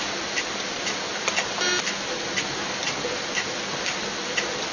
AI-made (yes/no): no